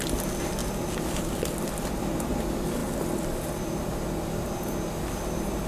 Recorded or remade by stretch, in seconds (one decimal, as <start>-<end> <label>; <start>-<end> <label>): 0.0-5.7 recorded

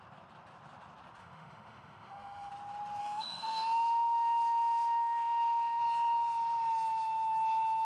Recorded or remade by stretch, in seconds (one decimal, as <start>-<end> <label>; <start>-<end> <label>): 0.0-1.2 recorded; 1.2-2.5 remade; 2.5-3.0 recorded; 3.0-5.8 remade; 5.8-7.8 recorded

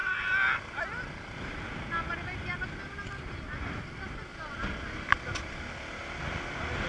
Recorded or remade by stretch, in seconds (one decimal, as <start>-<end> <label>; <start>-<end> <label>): 0.0-0.6 remade; 0.6-4.3 recorded; 4.3-5.1 remade; 5.1-6.9 recorded

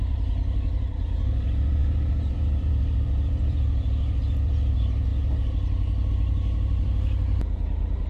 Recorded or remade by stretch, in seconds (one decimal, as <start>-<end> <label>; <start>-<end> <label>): 0.0-5.1 remade; 5.1-6.1 recorded; 6.1-8.1 remade

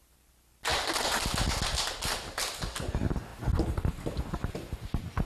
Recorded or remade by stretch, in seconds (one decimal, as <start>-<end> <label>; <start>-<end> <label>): 0.0-0.7 recorded; 0.7-1.2 remade; 1.2-5.3 recorded